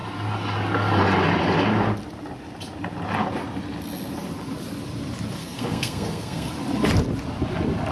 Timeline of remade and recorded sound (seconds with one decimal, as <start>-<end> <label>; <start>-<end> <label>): 0.0-5.4 recorded; 5.4-6.5 remade; 6.5-7.9 recorded